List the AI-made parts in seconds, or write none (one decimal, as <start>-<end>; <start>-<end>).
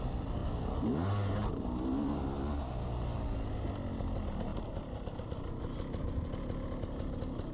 none